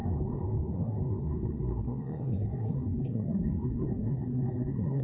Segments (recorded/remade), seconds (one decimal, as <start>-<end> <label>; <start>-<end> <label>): 0.0-5.0 remade